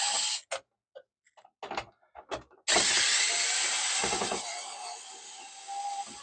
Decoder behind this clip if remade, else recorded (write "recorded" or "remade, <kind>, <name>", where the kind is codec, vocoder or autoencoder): recorded